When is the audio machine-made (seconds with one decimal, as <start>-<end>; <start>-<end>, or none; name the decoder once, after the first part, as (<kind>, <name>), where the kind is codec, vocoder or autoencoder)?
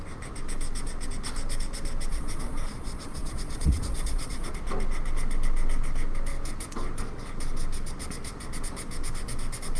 2.1-4.5 (vocoder, Vocos)